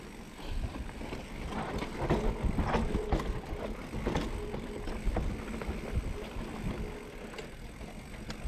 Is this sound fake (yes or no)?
no